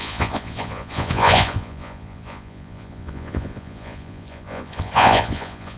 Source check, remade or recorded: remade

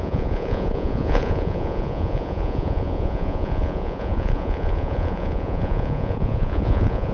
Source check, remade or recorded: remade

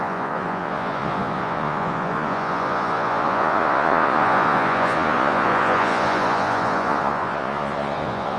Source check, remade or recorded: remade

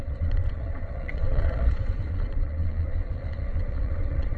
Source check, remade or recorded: remade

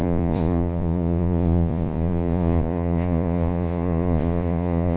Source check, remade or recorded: remade